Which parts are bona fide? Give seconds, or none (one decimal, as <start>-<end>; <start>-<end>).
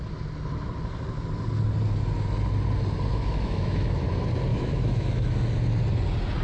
0.0-3.1; 4.0-4.5; 5.3-6.4